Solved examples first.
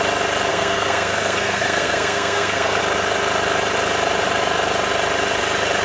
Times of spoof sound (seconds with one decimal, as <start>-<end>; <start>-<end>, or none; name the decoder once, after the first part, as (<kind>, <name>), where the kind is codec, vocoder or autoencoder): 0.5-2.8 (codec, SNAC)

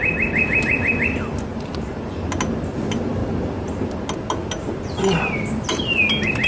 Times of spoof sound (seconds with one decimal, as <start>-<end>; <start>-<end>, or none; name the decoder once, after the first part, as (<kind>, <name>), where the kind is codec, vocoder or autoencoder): none

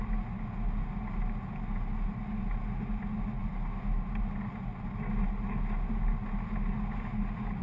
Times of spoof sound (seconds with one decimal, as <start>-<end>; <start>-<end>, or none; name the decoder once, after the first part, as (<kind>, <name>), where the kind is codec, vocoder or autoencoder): none

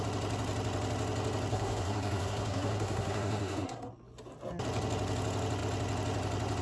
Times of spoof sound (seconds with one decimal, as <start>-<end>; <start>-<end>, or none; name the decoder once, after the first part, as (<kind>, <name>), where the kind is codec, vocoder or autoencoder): 1.5-3.9 (codec, SNAC)